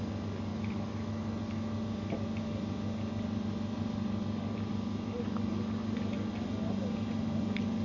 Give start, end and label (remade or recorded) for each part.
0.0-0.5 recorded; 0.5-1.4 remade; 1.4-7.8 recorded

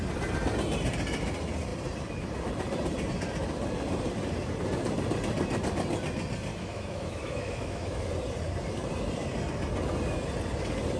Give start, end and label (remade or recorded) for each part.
0.0-6.5 recorded; 6.5-8.1 remade; 8.1-11.0 recorded

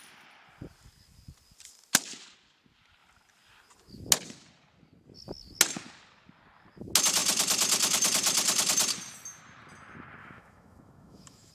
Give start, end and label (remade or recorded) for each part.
0.0-10.2 recorded; 10.2-11.5 remade